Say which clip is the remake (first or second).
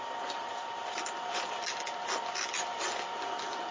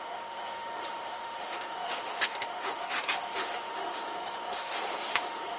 second